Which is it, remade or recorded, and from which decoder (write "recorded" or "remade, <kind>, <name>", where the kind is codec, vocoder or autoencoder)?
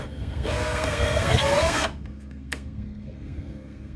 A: remade, codec, SNAC